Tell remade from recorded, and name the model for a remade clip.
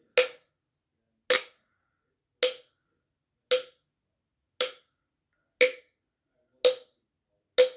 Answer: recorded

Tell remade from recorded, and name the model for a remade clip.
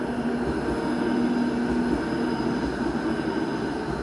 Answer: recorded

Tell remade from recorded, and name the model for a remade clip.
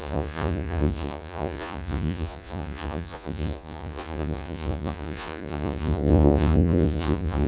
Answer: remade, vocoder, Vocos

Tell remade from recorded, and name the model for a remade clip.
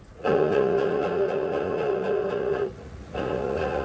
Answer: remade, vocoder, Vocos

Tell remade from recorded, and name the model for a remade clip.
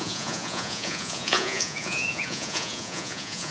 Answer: remade, vocoder, Vocos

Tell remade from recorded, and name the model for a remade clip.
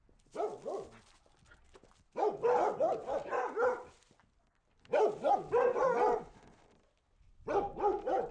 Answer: recorded